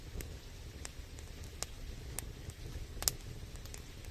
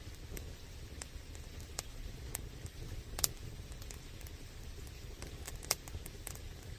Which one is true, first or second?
first